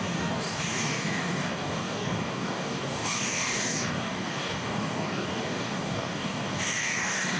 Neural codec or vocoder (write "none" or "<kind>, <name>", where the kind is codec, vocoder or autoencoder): codec, DAC